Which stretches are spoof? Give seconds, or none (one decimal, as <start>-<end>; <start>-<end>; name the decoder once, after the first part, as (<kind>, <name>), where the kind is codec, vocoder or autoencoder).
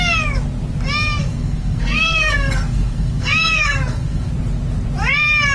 1.2-4.3 (codec, SNAC)